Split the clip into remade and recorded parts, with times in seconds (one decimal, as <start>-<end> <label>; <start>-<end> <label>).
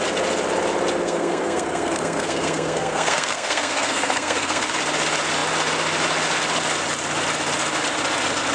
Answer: 0.0-1.0 recorded; 1.0-4.7 remade; 4.7-8.5 recorded